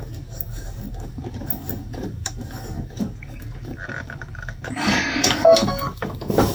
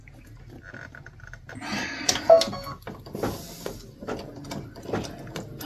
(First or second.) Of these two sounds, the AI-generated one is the first